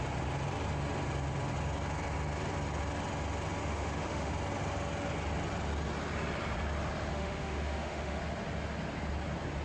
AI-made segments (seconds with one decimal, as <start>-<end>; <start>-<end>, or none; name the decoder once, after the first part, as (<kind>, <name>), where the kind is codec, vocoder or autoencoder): 3.6-4.3 (autoencoder, DAC-VAE); 7.1-8.2